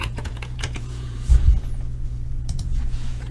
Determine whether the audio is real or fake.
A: fake